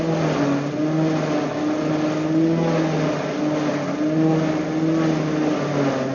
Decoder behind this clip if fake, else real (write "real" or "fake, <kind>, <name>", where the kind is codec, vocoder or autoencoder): real